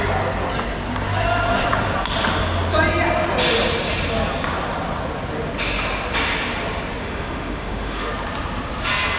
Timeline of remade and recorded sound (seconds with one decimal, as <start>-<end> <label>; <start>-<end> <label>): 0.0-7.0 recorded; 7.0-8.1 remade; 8.1-9.2 recorded